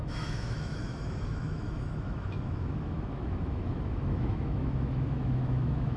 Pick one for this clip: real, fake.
fake